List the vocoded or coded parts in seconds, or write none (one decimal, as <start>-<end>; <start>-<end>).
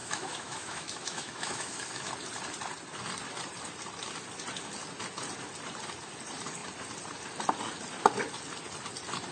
0.0-2.1